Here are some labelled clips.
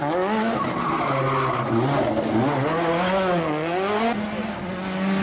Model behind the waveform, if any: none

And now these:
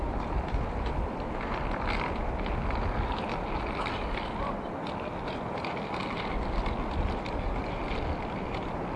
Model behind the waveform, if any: none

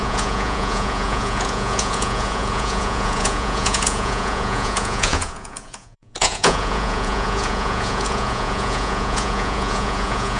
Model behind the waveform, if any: vocoder, Vocos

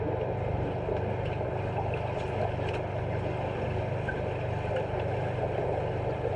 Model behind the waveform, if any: none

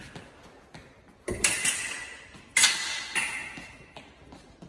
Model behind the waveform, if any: none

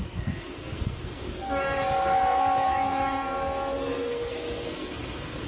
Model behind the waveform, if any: codec, SNAC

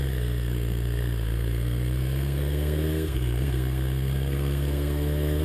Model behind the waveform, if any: codec, SNAC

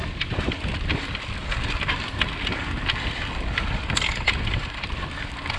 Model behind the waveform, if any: none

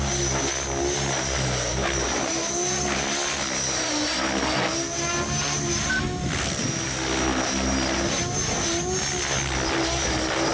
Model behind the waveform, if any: none